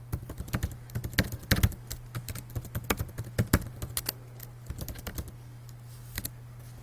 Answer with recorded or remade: recorded